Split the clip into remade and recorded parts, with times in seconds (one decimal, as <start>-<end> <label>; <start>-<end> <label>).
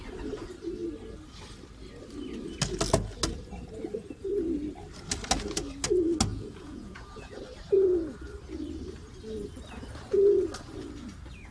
0.0-6.3 recorded; 6.3-7.4 remade; 7.4-11.5 recorded